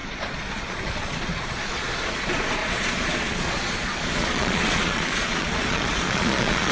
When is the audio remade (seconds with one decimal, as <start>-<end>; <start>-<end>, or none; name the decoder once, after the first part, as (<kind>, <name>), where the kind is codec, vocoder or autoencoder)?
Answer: 0.0-1.9 (vocoder, Vocos); 2.6-6.7